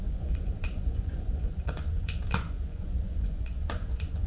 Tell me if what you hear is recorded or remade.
remade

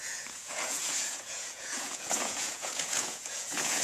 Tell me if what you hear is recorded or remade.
remade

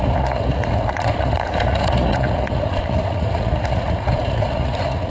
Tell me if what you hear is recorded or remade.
remade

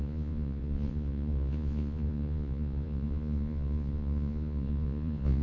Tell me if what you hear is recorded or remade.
remade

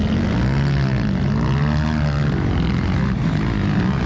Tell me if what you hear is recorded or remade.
recorded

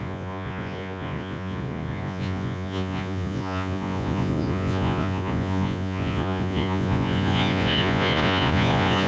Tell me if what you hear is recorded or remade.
remade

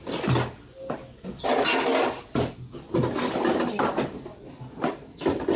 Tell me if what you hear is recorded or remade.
recorded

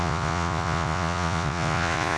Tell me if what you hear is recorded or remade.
remade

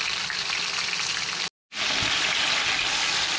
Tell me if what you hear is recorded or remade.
recorded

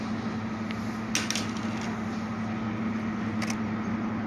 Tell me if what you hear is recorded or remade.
recorded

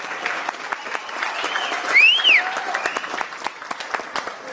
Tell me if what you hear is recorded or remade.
recorded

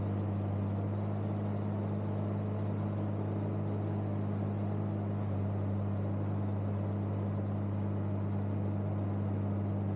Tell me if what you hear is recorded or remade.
recorded